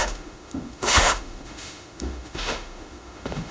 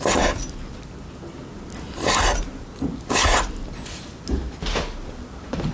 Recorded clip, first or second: second